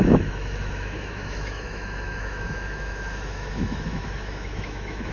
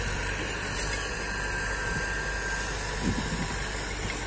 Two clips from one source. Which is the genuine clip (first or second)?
second